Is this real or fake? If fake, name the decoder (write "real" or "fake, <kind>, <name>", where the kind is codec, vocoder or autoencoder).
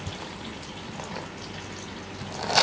real